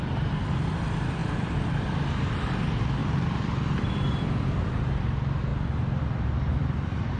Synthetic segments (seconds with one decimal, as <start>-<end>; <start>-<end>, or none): 3.0-4.8; 6.5-7.2